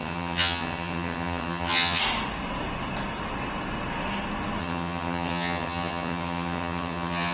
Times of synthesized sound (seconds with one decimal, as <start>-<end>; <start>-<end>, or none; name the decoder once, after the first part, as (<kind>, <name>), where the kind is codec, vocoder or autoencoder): 0.0-2.0 (vocoder, HiFi-GAN); 4.6-7.3